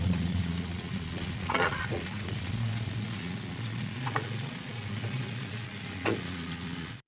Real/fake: fake